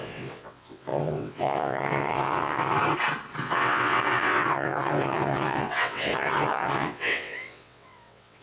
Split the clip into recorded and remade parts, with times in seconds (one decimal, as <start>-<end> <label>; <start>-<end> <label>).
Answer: 0.0-2.8 remade; 2.8-3.4 recorded; 3.4-8.4 remade